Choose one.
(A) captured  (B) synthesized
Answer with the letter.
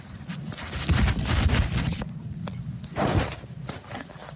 A